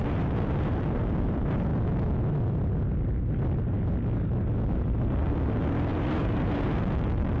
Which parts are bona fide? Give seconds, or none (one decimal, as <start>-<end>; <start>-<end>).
1.7-4.7